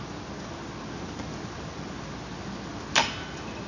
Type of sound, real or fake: real